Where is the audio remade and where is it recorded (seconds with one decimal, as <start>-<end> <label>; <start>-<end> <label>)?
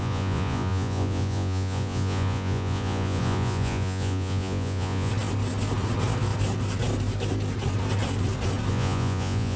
0.0-5.1 remade; 5.1-8.7 recorded; 8.7-9.6 remade